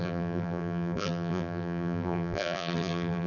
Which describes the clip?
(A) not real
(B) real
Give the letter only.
A